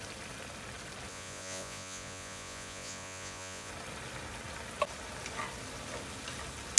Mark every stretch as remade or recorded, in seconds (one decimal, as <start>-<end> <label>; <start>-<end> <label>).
0.0-1.1 recorded; 1.1-3.7 remade; 3.7-6.8 recorded